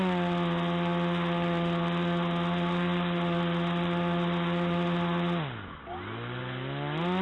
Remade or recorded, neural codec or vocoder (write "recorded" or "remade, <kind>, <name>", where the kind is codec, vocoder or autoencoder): recorded